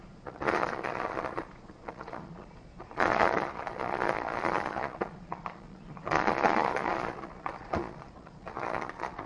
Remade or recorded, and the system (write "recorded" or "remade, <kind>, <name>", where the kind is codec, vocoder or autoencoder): remade, vocoder, Vocos